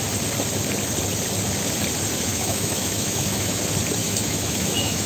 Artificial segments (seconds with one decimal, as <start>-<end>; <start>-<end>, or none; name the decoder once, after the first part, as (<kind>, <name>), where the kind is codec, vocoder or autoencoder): 2.3-3.6 (autoencoder, DAC-VAE); 4.0-5.1